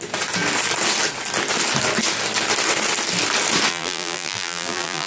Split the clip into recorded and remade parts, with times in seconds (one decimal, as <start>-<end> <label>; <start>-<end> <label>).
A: 0.0-3.7 recorded; 3.7-5.1 remade